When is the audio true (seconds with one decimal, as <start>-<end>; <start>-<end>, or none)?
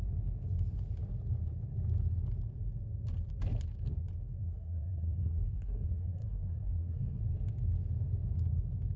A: 0.0-4.3; 7.2-9.0